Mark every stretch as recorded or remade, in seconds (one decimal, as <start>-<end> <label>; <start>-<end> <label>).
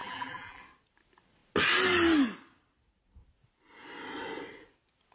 0.0-0.6 remade; 0.6-5.1 recorded